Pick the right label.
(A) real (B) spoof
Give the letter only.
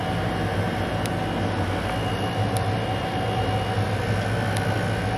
A